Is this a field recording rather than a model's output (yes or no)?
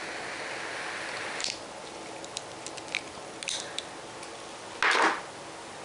yes